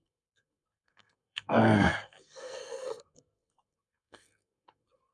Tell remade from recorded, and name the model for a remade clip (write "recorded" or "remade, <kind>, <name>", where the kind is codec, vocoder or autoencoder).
remade, codec, SNAC